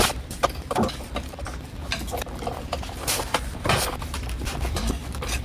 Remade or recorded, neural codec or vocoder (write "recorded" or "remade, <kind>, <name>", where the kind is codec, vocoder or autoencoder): remade, vocoder, BigVGAN v2